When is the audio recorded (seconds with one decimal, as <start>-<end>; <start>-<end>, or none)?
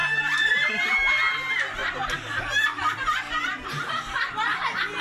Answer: 0.9-5.0